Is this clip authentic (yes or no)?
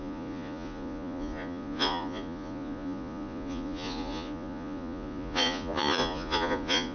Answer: no